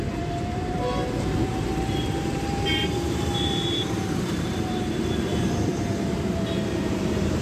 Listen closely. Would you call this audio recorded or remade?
remade